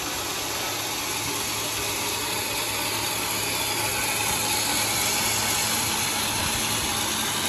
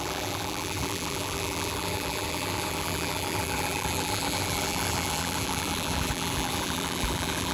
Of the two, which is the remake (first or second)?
second